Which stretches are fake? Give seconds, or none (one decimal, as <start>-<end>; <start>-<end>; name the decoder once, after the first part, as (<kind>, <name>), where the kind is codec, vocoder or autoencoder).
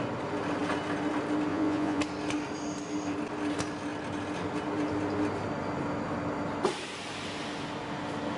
1.5-2.0 (vocoder, Vocos)